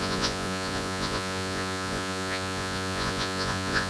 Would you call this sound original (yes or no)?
no